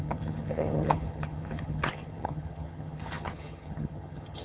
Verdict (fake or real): fake